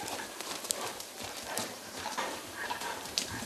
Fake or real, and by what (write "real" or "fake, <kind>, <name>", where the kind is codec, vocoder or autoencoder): fake, vocoder, BigVGAN v2